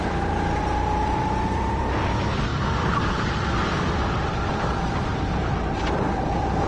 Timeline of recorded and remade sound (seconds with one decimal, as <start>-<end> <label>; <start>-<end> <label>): 0.0-3.6 remade; 3.6-4.5 recorded; 4.5-6.7 remade